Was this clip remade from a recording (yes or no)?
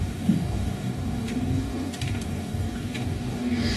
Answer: yes